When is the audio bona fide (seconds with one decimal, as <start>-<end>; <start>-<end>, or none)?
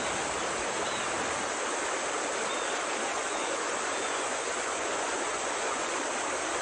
0.0-3.1; 6.0-6.6